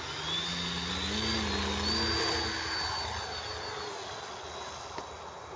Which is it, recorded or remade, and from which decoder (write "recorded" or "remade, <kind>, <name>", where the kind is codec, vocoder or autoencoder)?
recorded